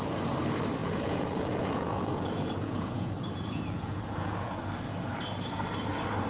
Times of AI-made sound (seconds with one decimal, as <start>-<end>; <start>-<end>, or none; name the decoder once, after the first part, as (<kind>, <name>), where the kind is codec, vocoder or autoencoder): 0.8-4.6 (vocoder, Vocos)